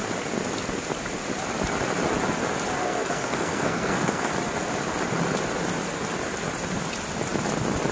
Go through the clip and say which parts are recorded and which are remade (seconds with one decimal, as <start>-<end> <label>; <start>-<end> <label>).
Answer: 0.0-2.8 recorded; 2.8-4.3 remade; 4.3-7.9 recorded